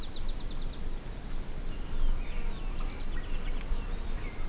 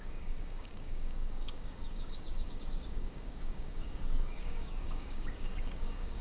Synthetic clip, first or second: second